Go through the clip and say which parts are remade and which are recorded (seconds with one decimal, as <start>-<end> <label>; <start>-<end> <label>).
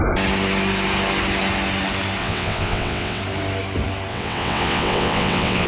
0.0-2.2 recorded; 2.2-3.2 remade; 3.2-4.1 recorded; 4.1-5.7 remade